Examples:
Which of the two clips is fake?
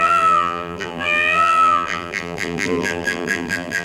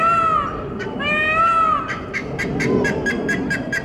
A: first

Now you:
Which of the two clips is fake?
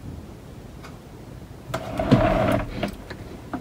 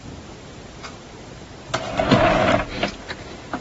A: second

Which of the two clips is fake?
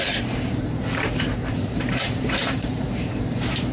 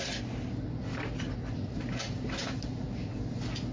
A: first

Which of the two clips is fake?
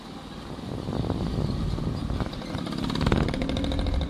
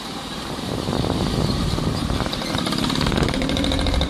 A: second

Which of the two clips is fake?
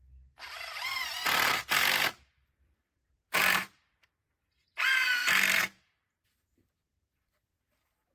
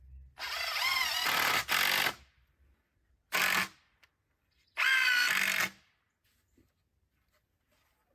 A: first